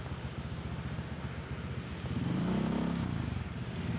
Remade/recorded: recorded